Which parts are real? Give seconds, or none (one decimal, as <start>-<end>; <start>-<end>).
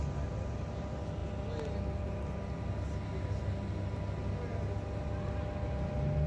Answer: 0.0-6.3